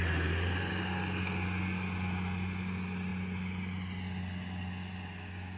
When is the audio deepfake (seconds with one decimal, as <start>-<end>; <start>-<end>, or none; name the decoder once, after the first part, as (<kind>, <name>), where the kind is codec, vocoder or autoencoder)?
none